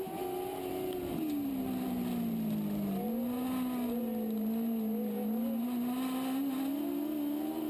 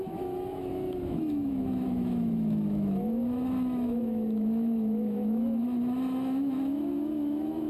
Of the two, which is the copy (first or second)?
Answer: second